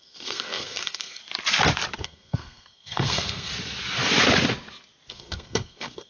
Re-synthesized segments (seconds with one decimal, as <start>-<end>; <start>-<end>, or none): 0.0-1.2; 2.0-3.5; 5.1-6.1